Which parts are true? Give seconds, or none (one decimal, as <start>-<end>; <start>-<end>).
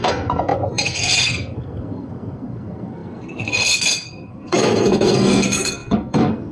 none